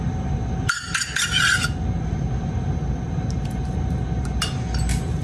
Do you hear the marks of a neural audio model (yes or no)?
no